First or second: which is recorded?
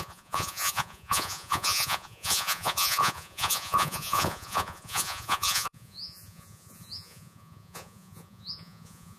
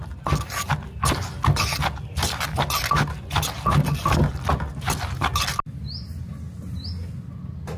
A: second